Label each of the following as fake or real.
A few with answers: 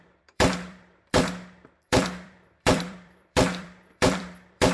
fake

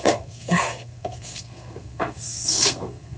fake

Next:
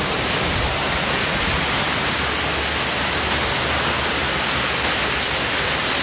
real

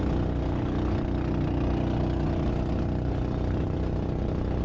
real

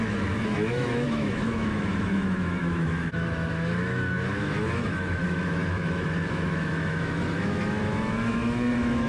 fake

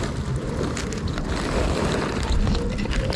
fake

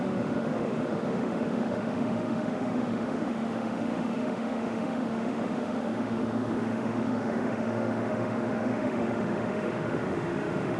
fake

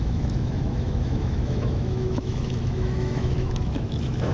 fake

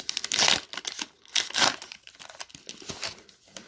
real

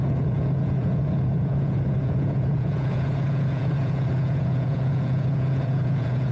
fake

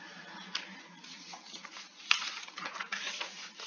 fake